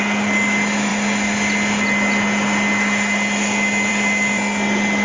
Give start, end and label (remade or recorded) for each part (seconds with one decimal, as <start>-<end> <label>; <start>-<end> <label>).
0.0-5.0 recorded